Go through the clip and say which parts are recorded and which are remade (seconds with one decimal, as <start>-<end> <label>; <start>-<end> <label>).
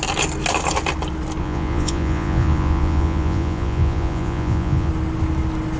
0.0-1.4 recorded; 1.4-4.9 remade; 4.9-5.8 recorded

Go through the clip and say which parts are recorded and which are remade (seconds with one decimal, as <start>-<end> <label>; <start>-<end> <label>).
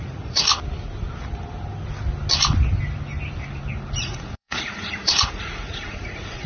0.0-0.5 remade; 0.5-4.0 recorded; 4.0-6.5 remade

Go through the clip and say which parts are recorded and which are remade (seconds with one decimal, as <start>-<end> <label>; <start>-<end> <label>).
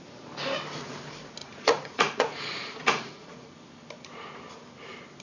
0.0-1.4 recorded; 1.4-3.5 remade; 3.5-5.2 recorded